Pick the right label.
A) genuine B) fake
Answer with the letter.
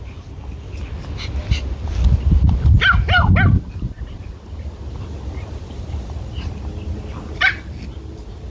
A